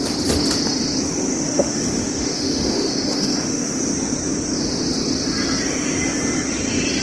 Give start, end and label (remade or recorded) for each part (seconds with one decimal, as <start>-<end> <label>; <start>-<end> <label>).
0.0-1.3 recorded; 1.3-3.8 remade; 3.8-7.0 recorded